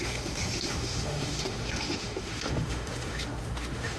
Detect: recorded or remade remade